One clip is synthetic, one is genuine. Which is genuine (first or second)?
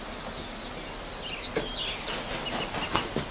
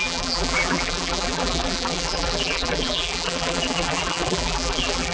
first